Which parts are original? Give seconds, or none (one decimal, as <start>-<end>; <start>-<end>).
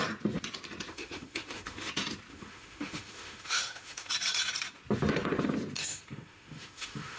0.0-0.9; 1.9-2.3; 4.1-5.8